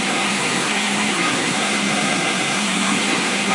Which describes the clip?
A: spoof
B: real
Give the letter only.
A